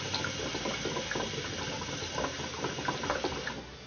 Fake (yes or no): no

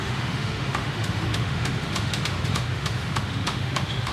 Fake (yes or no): yes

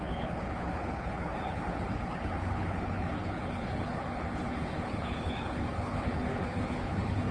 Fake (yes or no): yes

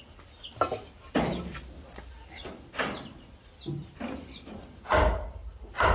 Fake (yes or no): no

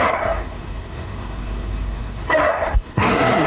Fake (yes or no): yes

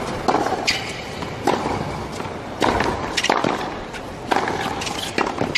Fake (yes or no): no